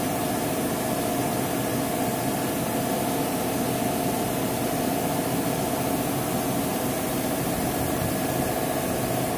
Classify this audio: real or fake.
real